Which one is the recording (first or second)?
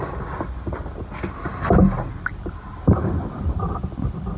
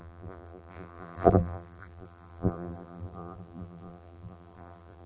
first